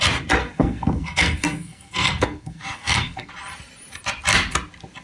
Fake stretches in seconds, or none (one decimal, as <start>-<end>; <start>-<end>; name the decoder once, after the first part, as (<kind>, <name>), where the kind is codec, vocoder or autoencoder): 0.4-3.3 (codec, SNAC)